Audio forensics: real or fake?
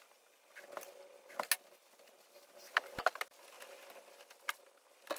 real